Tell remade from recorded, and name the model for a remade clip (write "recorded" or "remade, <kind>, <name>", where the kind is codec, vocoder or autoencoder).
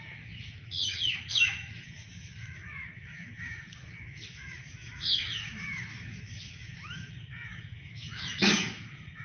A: remade, autoencoder, DAC-VAE